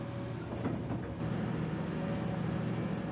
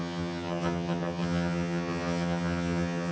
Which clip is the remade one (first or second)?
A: second